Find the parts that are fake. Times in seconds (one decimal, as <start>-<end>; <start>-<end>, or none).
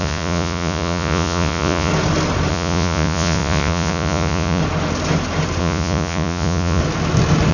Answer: 0.0-1.9; 2.5-4.6; 5.6-6.8